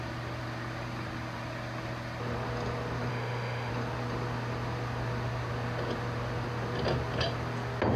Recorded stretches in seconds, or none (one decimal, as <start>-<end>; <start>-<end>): 0.0-3.1; 3.7-8.0